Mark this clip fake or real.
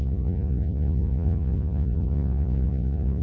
fake